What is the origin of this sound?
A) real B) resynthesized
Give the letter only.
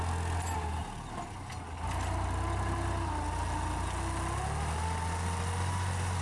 A